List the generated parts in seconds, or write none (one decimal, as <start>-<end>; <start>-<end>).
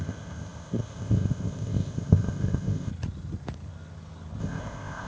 0.0-2.9; 4.4-5.1